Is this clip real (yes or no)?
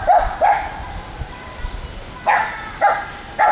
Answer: yes